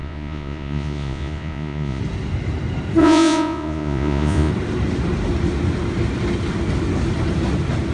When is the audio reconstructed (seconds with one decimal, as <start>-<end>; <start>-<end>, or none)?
0.0-2.0; 3.0-4.5